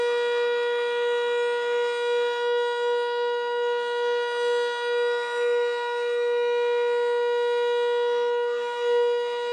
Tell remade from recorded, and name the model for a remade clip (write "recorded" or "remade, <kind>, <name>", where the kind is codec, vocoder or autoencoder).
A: remade, autoencoder, DAC-VAE